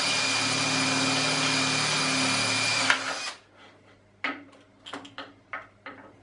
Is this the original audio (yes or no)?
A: yes